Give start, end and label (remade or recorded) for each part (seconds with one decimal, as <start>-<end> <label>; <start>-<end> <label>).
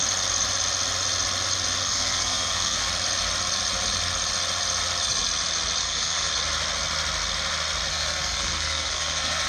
0.0-1.8 recorded; 1.8-2.9 remade; 2.9-5.8 recorded; 5.8-6.3 remade; 6.3-7.9 recorded; 7.9-9.5 remade